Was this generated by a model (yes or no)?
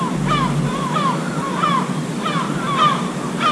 no